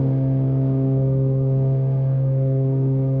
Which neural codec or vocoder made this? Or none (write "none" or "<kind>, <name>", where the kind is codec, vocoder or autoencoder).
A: codec, SNAC